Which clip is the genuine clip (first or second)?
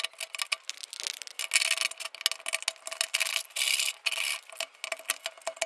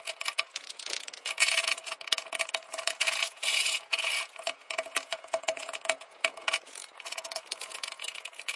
first